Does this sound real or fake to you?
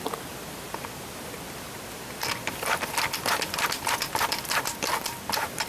fake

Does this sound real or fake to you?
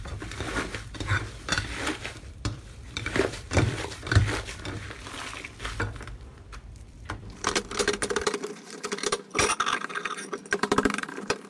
fake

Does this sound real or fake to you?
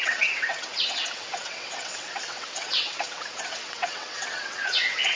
fake